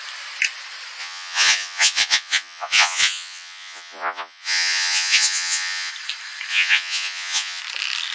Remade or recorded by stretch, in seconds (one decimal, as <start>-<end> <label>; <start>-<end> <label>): 0.0-1.0 recorded; 1.0-5.9 remade; 5.9-6.5 recorded; 6.5-7.6 remade; 7.6-8.1 recorded